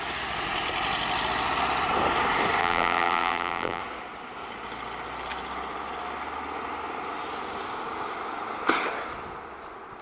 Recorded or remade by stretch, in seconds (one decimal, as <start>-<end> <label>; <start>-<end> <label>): 0.0-2.6 recorded; 2.6-3.8 remade; 3.8-10.0 recorded